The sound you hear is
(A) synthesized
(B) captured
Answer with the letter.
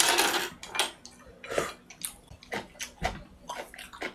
B